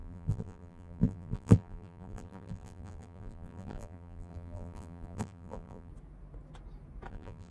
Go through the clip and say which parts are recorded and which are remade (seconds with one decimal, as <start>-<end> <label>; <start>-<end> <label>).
0.0-5.9 remade; 5.9-7.1 recorded; 7.1-7.5 remade

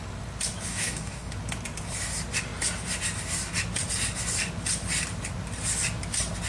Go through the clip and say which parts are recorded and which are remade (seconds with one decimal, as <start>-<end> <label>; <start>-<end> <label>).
0.0-0.7 recorded; 0.7-1.3 remade; 1.3-6.5 recorded

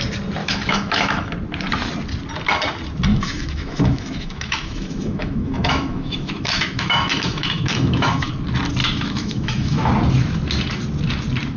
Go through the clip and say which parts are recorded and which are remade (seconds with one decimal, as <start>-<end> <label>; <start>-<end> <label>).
0.0-0.4 recorded; 0.4-1.3 remade; 1.3-3.1 recorded; 3.1-8.3 remade; 8.3-8.8 recorded; 8.8-9.9 remade; 9.9-11.6 recorded

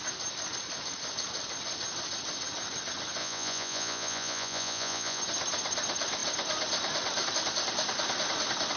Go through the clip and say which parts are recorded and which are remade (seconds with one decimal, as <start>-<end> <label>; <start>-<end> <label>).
0.0-3.2 recorded; 3.2-5.2 remade; 5.2-8.8 recorded

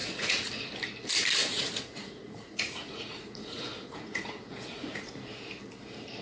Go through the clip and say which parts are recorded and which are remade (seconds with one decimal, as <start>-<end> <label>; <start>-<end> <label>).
0.0-0.5 remade; 0.5-1.4 recorded; 1.4-5.1 remade; 5.1-6.2 recorded

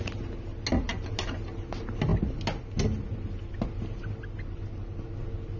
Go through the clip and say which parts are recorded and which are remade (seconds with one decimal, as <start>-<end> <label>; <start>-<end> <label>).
0.0-5.6 recorded

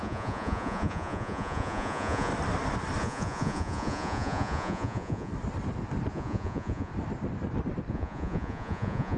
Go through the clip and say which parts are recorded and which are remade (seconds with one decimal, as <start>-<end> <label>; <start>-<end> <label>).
0.0-2.3 remade; 2.3-3.0 recorded; 3.0-5.3 remade; 5.3-6.1 recorded; 6.1-6.9 remade; 6.9-7.9 recorded; 7.9-9.2 remade